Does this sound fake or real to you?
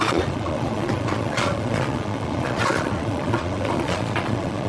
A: fake